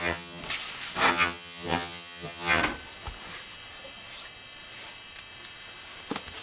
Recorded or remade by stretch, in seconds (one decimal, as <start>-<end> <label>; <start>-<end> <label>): 0.0-0.4 remade; 0.4-1.1 recorded; 1.1-2.6 remade; 2.6-6.4 recorded